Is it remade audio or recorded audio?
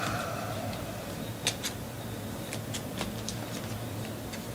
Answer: recorded